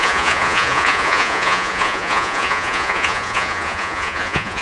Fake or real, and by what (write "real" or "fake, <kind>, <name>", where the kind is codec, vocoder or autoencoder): fake, vocoder, Vocos